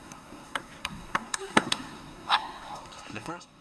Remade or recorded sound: remade